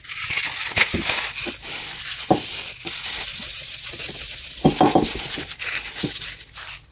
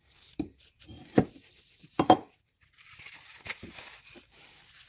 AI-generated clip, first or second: second